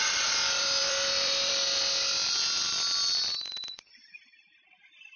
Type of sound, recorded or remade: remade